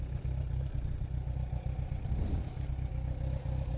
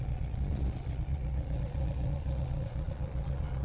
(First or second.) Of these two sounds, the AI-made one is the second